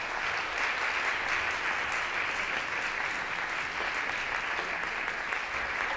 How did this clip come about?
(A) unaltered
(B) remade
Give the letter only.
A